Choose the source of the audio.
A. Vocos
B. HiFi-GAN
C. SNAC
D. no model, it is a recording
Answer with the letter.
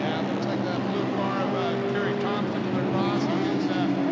D